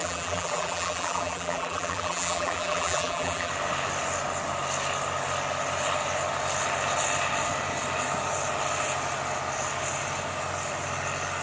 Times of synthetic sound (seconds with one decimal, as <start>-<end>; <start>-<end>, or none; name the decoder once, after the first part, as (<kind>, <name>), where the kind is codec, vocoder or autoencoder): 0.0-3.5 (vocoder, BigVGAN v2)